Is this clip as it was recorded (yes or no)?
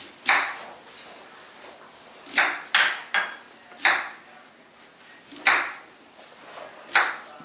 yes